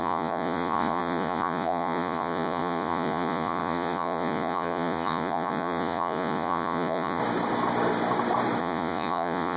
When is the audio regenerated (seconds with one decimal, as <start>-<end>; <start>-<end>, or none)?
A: 0.0-7.2; 8.6-9.6